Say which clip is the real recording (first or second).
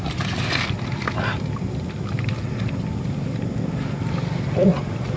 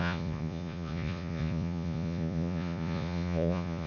first